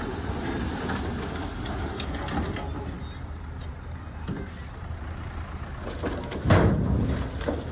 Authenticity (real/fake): real